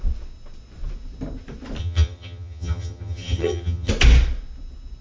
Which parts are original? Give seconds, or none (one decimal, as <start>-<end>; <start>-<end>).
0.0-1.8; 3.9-5.0